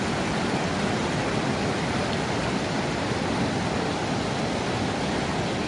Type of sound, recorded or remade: recorded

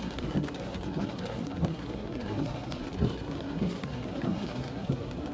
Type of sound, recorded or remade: remade